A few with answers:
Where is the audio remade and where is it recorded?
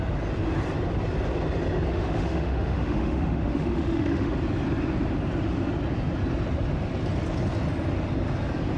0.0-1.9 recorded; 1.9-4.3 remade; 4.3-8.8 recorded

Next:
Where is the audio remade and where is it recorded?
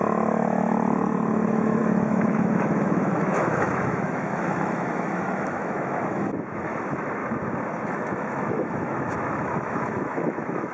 0.0-7.2 remade; 7.2-7.8 recorded; 7.8-10.7 remade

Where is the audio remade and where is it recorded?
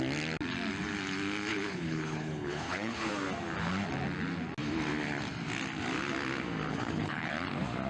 0.0-1.5 recorded; 1.5-3.1 remade; 3.1-6.7 recorded; 6.7-7.3 remade; 7.3-7.9 recorded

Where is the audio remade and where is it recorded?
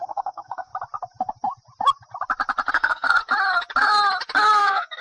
0.0-0.7 remade; 0.7-2.7 recorded; 2.7-3.2 remade; 3.2-4.6 recorded; 4.6-5.0 remade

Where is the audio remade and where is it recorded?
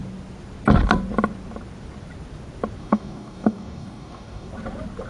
0.0-2.8 recorded; 2.8-4.5 remade; 4.5-5.1 recorded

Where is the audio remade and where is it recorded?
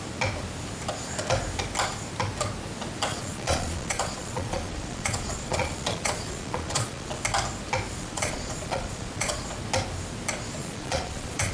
0.0-3.1 recorded; 3.1-7.2 remade; 7.2-8.0 recorded; 8.0-9.4 remade; 9.4-10.6 recorded; 10.6-11.5 remade